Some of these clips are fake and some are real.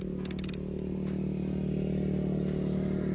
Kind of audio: real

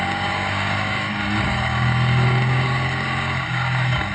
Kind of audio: fake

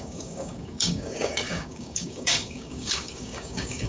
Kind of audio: fake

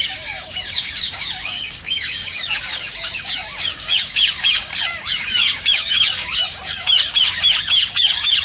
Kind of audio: fake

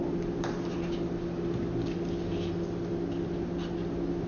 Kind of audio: real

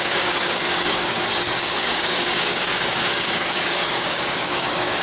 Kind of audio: fake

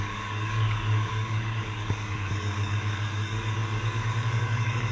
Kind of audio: fake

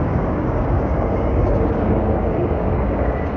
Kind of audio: fake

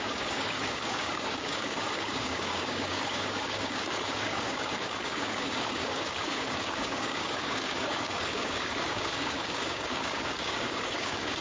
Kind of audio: fake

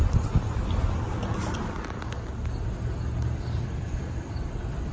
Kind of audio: real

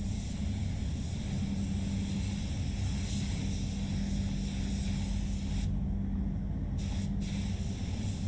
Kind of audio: real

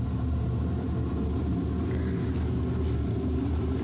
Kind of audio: real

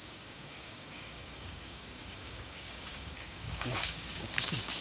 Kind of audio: fake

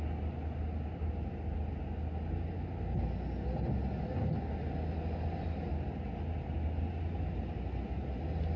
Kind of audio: real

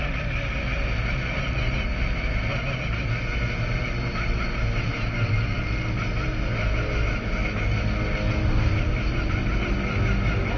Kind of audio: real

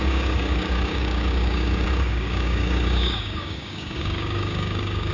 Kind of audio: fake